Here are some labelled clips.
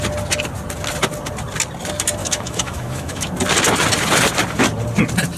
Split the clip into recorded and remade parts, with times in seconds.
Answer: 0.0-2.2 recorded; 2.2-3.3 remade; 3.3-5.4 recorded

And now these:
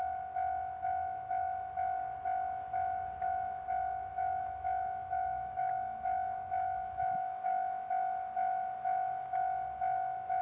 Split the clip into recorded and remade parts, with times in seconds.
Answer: 0.0-4.1 recorded; 4.1-7.9 remade; 7.9-10.4 recorded

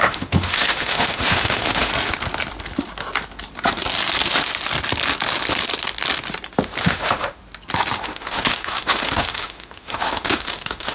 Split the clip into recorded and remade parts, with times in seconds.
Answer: 0.0-1.9 remade; 1.9-6.8 recorded; 6.8-7.4 remade; 7.4-8.0 recorded; 8.0-10.9 remade